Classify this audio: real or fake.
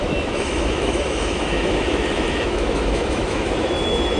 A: fake